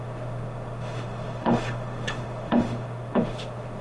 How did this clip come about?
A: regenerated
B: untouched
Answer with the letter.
A